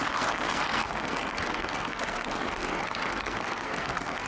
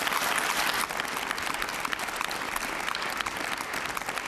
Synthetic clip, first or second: first